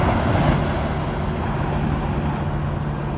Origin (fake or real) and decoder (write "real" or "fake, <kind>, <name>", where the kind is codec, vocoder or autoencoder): real